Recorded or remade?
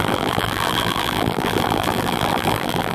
remade